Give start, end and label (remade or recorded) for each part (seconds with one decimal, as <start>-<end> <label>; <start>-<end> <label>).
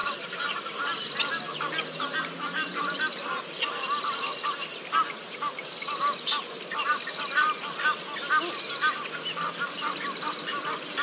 0.0-11.0 recorded